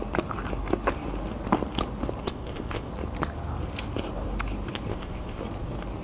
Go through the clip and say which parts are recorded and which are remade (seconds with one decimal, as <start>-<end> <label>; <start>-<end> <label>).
0.0-2.2 recorded; 2.2-2.9 remade; 2.9-4.9 recorded; 4.9-5.4 remade; 5.4-6.0 recorded